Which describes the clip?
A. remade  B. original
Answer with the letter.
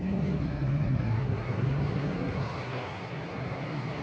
A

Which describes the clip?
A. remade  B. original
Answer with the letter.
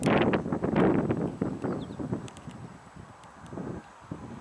B